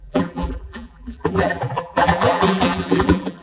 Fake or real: fake